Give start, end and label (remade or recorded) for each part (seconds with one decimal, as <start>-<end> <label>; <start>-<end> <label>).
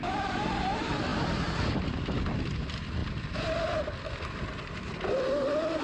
0.0-1.1 recorded; 1.1-1.8 remade; 1.8-3.0 recorded; 3.0-4.4 remade; 4.4-5.8 recorded